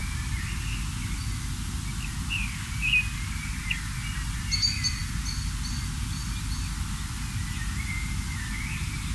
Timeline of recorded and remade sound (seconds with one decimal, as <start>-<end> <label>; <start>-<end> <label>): 0.0-9.1 recorded